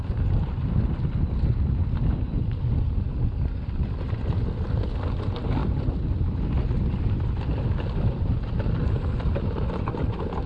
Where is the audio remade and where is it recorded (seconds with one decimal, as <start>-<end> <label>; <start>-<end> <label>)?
0.0-10.5 recorded